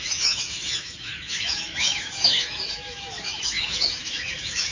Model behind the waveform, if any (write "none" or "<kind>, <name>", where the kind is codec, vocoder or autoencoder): autoencoder, DAC-VAE